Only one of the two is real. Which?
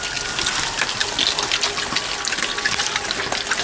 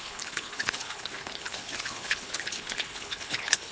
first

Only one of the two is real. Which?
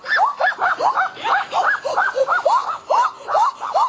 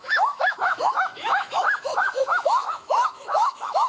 first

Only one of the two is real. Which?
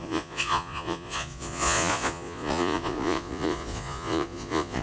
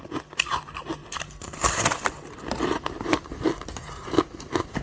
second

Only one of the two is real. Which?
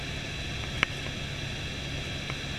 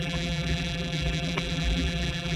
first